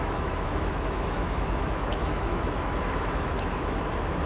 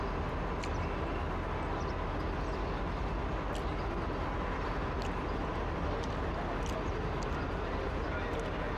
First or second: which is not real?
first